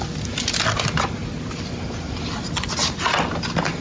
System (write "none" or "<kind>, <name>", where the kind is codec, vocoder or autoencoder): none